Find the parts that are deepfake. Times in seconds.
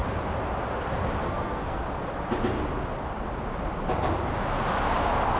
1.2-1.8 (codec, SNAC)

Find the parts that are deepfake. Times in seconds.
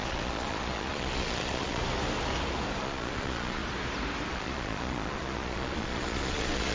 0.0-1.8 (vocoder, Vocos); 2.8-3.6; 4.3-6.7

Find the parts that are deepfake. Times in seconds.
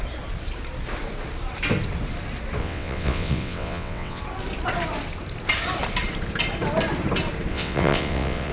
2.6-4.2 (vocoder, WaveNeXt); 7.5-8.5